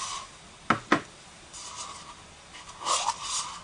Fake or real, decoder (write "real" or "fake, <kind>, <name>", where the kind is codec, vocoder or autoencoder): real